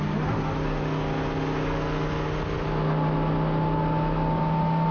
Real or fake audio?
real